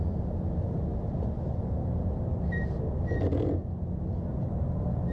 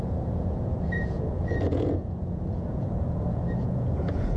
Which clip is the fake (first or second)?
second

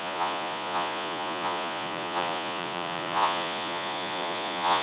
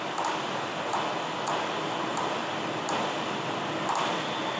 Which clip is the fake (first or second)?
first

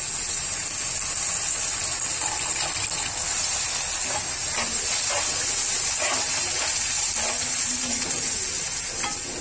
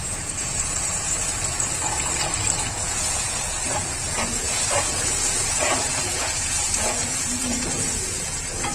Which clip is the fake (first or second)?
second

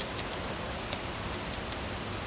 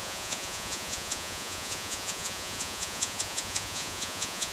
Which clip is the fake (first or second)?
second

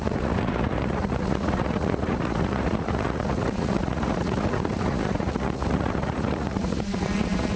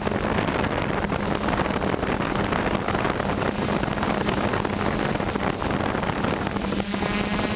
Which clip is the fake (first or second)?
first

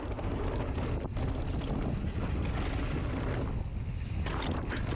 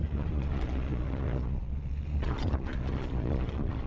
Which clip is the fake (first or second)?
second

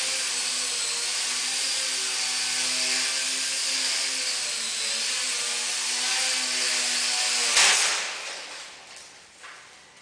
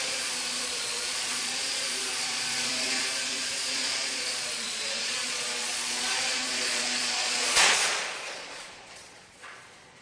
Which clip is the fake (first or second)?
second